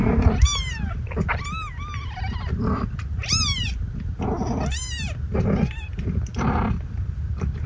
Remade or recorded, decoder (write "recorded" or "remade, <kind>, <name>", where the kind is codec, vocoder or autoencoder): recorded